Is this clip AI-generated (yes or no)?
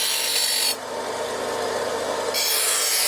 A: no